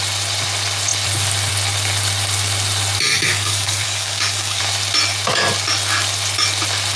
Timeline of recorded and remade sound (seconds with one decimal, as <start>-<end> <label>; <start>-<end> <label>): 0.0-3.1 recorded; 3.1-4.6 remade; 4.6-7.0 recorded